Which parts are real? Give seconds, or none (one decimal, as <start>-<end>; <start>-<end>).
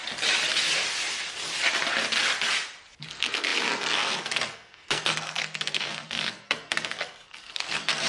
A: 0.0-3.1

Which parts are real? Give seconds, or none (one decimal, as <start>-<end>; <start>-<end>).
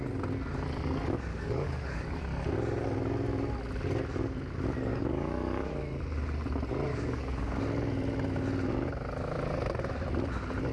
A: 0.0-1.3; 2.2-4.9; 5.8-6.9; 7.6-10.7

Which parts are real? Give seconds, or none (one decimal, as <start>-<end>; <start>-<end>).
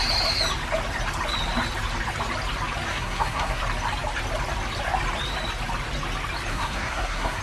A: 0.0-2.9; 3.6-6.5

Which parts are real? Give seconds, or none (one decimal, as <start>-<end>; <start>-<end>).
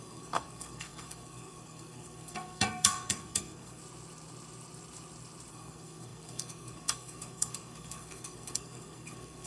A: 3.8-5.5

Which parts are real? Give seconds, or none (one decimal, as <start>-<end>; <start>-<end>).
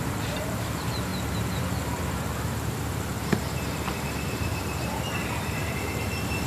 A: none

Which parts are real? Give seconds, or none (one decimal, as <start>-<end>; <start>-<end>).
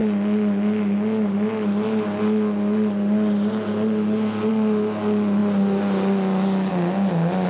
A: 0.0-7.5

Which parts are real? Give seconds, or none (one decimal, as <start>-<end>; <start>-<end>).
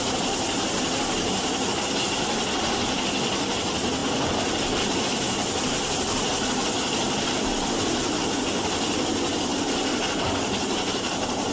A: 0.0-11.5